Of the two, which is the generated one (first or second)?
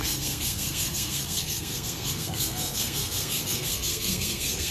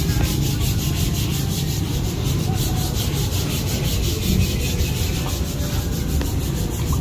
first